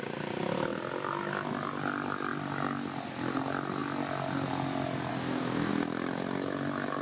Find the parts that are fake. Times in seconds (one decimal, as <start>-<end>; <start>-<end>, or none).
5.1-5.7